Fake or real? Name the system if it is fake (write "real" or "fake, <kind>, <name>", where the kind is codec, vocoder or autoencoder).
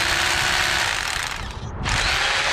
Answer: real